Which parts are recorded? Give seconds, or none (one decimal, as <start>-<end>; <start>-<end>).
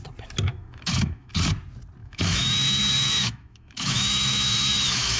0.0-0.5; 1.3-2.0